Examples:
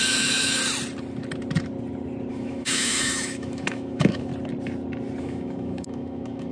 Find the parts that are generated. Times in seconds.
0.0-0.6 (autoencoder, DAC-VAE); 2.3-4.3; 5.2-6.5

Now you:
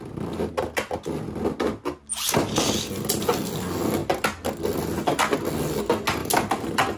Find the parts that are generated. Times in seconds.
none

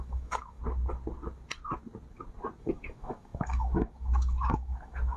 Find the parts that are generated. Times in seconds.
0.0-0.6 (autoencoder, DAC-VAE); 2.6-5.2

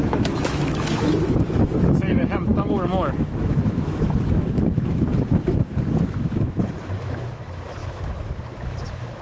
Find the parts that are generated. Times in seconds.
0.0-9.2 (autoencoder, DAC-VAE)

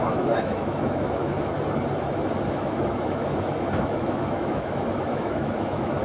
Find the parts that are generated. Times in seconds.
0.0-1.5 (autoencoder, DAC-VAE); 2.5-6.0

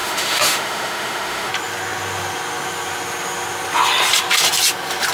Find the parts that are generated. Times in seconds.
0.0-1.5 (autoencoder, DAC-VAE)

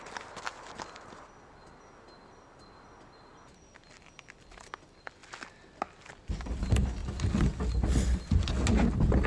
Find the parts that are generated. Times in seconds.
none